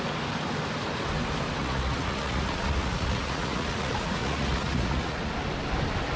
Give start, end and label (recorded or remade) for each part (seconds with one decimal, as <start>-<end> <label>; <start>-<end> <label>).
0.0-1.6 recorded; 1.6-5.3 remade; 5.3-6.2 recorded